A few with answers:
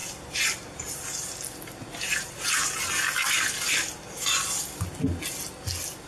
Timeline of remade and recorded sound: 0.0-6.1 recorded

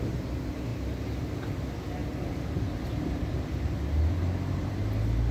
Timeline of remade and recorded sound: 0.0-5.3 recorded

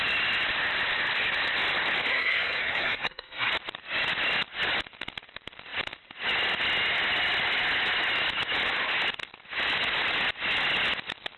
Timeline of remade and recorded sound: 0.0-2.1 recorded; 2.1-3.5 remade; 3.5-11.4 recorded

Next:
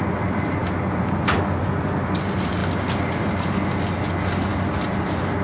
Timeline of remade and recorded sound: 0.0-5.4 recorded

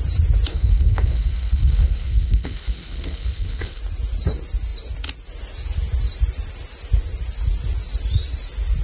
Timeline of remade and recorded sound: 0.0-0.5 recorded; 0.5-3.8 remade; 3.8-8.8 recorded